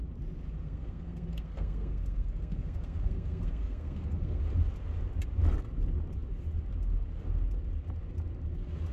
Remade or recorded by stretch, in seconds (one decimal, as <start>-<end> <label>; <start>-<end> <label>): 0.0-0.6 recorded; 0.6-4.4 remade; 4.4-8.9 recorded